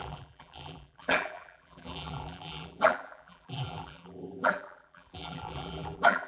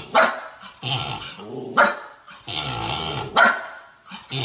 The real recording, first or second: second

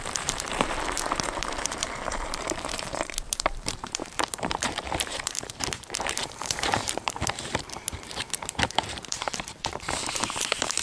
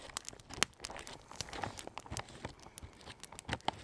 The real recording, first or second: second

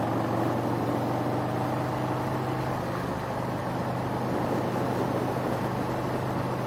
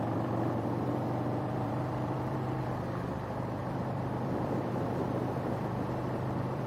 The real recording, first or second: first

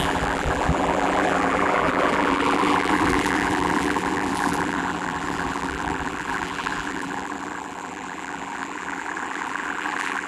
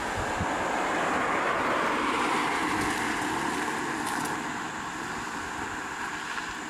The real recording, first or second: second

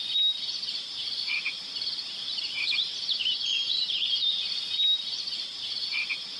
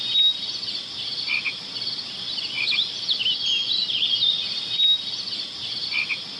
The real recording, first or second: second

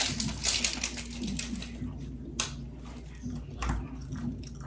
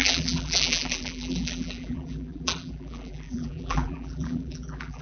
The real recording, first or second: first